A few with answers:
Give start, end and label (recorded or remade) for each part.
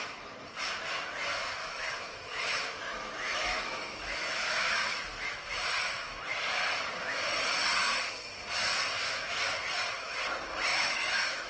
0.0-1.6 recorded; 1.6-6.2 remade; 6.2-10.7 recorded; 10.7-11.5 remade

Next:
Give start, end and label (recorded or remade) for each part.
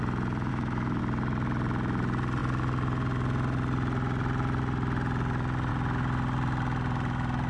0.0-0.5 recorded; 0.5-1.0 remade; 1.0-7.5 recorded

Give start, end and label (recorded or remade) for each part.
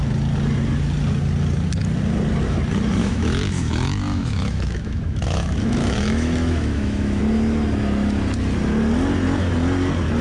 0.0-3.0 recorded; 3.0-7.2 remade; 7.2-10.2 recorded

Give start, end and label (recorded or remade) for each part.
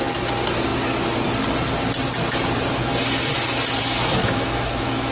0.0-4.2 recorded; 4.2-5.1 remade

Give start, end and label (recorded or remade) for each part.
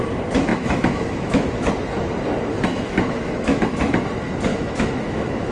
0.0-0.5 recorded; 0.5-1.7 remade; 1.7-2.7 recorded; 2.7-3.9 remade; 3.9-4.5 recorded; 4.5-5.5 remade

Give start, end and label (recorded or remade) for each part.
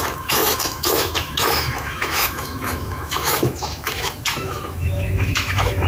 0.0-5.9 remade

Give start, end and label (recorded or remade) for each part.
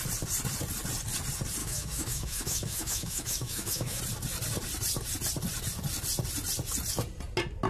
0.0-1.6 recorded; 1.6-4.0 remade; 4.0-7.7 recorded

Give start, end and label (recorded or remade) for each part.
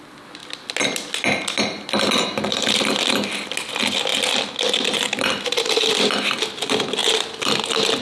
0.0-8.0 recorded